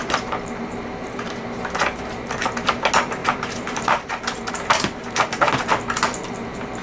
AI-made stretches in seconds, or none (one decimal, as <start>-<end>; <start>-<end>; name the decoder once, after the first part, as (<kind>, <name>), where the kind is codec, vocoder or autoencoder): 0.0-1.4 (vocoder, BigVGAN v2); 3.2-4.5

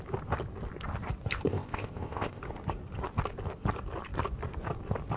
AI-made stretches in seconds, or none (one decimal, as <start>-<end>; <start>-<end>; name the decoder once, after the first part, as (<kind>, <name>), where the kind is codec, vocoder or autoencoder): 1.5-2.4 (codec, ZipCodec)

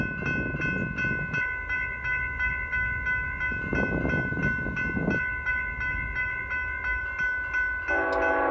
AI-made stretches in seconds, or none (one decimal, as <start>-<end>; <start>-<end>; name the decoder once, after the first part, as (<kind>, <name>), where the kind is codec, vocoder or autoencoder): none

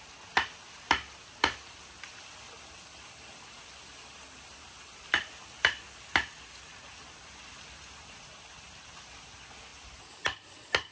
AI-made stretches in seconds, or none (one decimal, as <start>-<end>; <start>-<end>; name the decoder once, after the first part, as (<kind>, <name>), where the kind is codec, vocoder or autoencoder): none

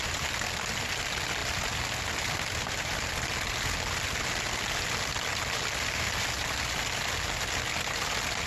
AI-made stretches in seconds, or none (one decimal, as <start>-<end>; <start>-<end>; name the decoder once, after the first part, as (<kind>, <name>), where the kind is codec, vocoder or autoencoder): none

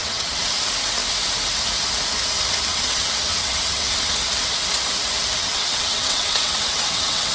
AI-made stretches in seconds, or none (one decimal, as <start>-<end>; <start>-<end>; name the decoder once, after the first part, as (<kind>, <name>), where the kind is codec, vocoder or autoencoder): 0.0-0.5 (vocoder, WaveNeXt); 2.7-4.1; 5.4-7.3